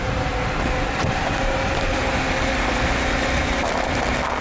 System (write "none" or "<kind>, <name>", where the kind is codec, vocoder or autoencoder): none